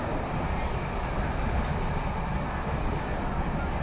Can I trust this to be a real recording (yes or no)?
yes